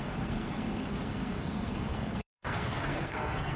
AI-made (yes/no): yes